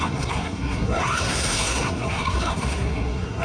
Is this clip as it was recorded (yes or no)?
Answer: no